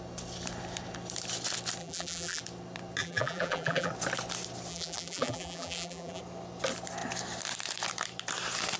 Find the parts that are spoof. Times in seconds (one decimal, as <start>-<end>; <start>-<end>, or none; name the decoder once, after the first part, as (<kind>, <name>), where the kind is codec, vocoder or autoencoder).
1.8-2.4 (vocoder, BigVGAN v2); 3.0-3.9; 4.7-6.2